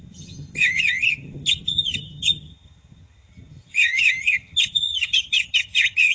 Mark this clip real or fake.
fake